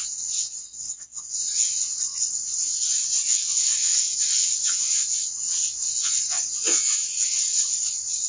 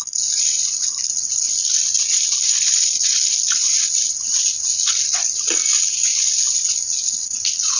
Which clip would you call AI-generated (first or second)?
first